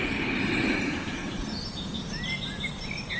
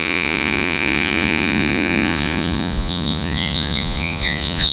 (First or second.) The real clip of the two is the first